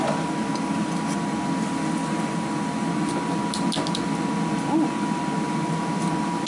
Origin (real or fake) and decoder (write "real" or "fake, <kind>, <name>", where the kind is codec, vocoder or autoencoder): real